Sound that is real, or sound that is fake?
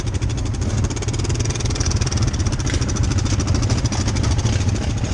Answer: real